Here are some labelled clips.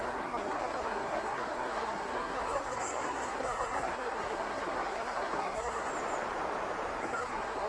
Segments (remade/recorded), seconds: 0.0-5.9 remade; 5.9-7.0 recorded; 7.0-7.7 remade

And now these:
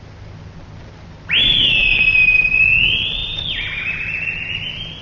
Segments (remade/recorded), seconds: 0.0-5.0 recorded

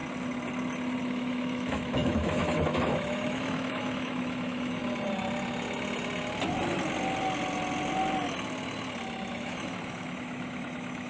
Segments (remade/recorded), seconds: 0.0-1.0 recorded; 1.0-4.8 remade; 4.8-9.3 recorded; 9.3-11.1 remade

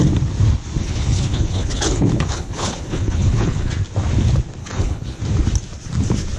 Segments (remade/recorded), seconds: 0.0-0.8 recorded; 0.8-3.7 remade; 3.7-4.6 recorded; 4.6-5.2 remade; 5.2-6.4 recorded

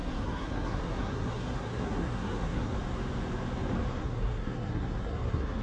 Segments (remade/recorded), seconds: 0.0-2.7 remade; 2.7-3.9 recorded; 3.9-5.6 remade

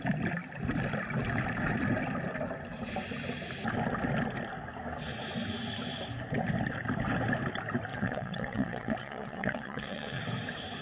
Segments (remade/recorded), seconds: 0.0-7.9 recorded; 7.9-10.2 remade; 10.2-10.8 recorded

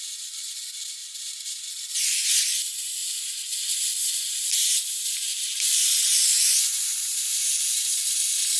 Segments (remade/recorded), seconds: 0.0-1.0 recorded; 1.0-2.3 remade; 2.3-3.0 recorded; 3.0-7.8 remade; 7.8-8.6 recorded

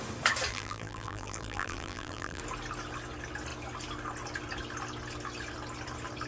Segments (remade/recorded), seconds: 0.0-0.5 recorded; 0.5-2.4 remade; 2.4-6.3 recorded